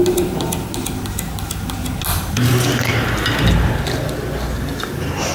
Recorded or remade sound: recorded